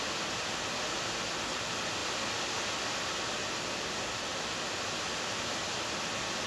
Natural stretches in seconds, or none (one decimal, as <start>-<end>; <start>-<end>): 0.0-6.5